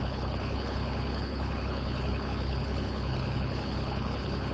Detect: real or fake fake